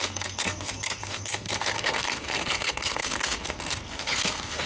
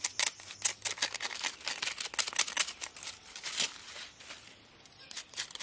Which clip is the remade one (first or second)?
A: first